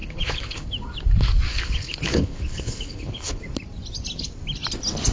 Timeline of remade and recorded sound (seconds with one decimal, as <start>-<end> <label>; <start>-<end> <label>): 0.0-0.6 remade; 0.6-1.5 recorded; 1.5-3.4 remade; 3.4-5.1 recorded